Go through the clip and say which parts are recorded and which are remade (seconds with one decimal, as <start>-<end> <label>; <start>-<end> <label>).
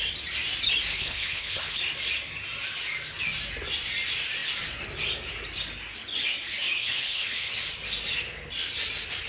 0.0-0.9 recorded; 0.9-1.8 remade; 1.8-6.8 recorded; 6.8-7.5 remade; 7.5-9.3 recorded